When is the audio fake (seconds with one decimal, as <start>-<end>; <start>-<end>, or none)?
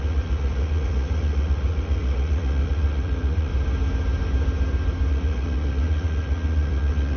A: 0.0-3.5; 5.1-7.2